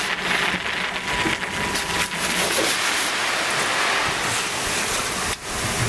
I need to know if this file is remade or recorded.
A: recorded